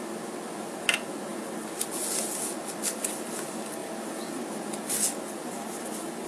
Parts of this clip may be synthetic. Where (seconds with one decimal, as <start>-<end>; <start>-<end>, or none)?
none